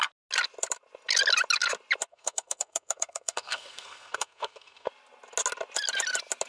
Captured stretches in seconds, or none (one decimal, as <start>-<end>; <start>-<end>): 0.0-2.1; 4.9-6.5